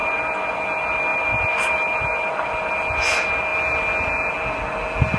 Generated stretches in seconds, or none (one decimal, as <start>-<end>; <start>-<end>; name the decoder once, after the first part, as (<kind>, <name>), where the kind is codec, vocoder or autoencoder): 1.1-2.6 (vocoder, BigVGAN v2)